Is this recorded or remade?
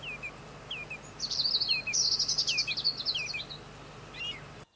recorded